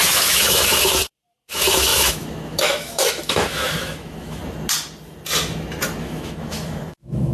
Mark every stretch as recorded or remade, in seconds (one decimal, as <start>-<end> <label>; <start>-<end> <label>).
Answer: 0.0-1.0 remade; 1.0-1.5 recorded; 1.5-4.4 remade; 4.4-6.0 recorded; 6.0-7.3 remade

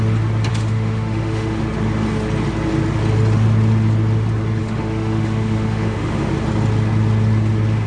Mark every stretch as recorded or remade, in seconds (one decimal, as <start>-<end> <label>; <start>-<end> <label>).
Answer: 0.0-0.5 recorded; 0.5-1.6 remade; 1.6-4.6 recorded; 4.6-6.3 remade; 6.3-7.9 recorded

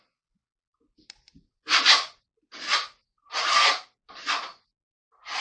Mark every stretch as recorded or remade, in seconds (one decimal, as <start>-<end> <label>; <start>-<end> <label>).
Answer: 0.0-5.4 recorded

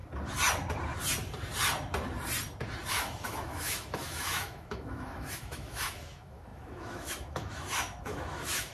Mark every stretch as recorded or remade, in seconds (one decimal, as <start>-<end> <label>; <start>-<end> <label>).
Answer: 0.0-2.9 recorded; 2.9-8.7 remade

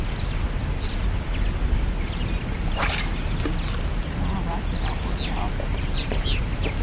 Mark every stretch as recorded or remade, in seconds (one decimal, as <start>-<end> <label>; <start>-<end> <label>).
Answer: 0.0-6.8 recorded

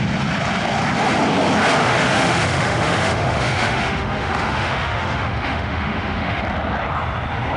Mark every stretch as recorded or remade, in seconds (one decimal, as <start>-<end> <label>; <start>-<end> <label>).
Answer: 0.0-1.8 recorded; 1.8-6.4 remade; 6.4-7.6 recorded

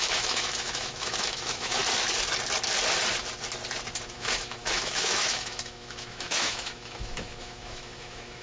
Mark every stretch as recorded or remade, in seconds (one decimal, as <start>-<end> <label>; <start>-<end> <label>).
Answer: 0.0-1.8 remade; 1.8-4.1 recorded; 4.1-8.4 remade

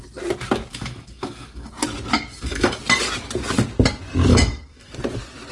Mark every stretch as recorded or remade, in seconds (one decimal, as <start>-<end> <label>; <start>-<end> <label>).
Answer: 0.0-0.7 recorded; 0.7-1.7 remade; 1.7-2.3 recorded; 2.3-2.8 remade; 2.8-4.3 recorded; 4.3-4.9 remade; 4.9-5.5 recorded